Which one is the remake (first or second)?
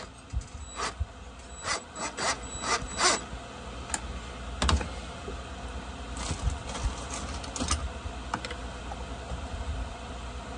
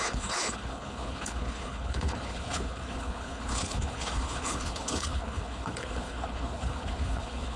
second